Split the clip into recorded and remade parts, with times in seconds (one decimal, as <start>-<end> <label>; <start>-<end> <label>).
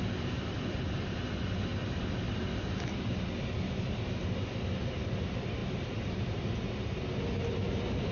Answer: 0.0-8.1 recorded